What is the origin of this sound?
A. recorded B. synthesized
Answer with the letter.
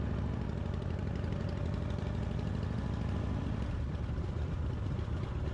B